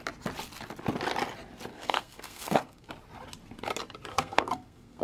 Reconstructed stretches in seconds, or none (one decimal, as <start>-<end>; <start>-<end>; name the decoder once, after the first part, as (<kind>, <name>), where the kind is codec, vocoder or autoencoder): 1.7-2.9 (codec, SNAC); 4.1-5.0